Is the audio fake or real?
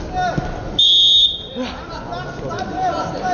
real